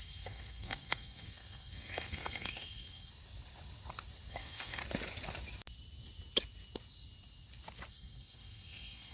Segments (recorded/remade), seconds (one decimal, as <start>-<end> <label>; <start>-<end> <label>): 0.0-3.1 remade; 3.1-4.3 recorded; 4.3-4.8 remade; 4.8-7.9 recorded; 7.9-9.1 remade